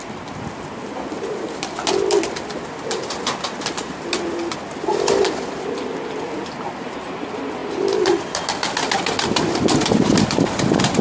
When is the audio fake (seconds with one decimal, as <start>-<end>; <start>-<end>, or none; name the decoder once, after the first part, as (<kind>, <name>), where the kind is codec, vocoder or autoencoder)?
none